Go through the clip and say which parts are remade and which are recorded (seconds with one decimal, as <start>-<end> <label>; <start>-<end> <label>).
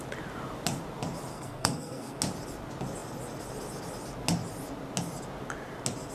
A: 0.0-1.3 recorded; 1.3-2.2 remade; 2.2-6.1 recorded